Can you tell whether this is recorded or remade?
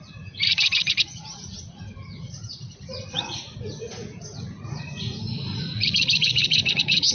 remade